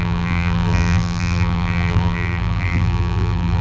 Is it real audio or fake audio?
fake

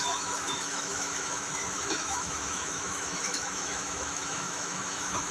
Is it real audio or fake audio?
fake